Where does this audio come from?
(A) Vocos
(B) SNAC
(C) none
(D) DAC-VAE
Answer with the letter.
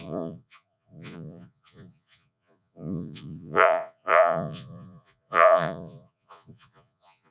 A